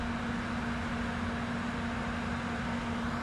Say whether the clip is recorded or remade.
recorded